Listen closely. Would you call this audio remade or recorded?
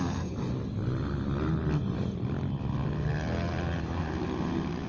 recorded